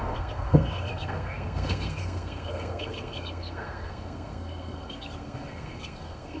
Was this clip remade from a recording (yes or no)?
yes